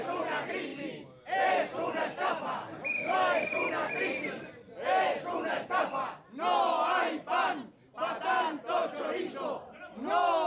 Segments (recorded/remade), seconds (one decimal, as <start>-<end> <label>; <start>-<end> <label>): 0.0-10.5 recorded